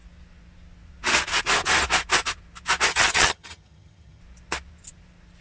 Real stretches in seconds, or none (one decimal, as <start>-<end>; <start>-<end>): 0.0-2.9; 4.2-5.4